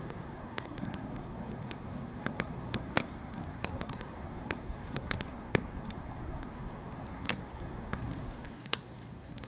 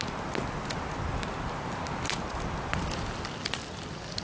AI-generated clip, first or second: first